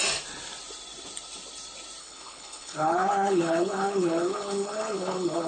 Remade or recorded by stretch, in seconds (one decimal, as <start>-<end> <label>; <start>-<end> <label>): 0.0-2.0 recorded; 2.0-5.5 remade